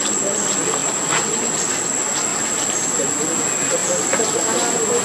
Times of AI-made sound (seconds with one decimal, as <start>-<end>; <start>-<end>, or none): 2.3-2.9; 3.8-5.0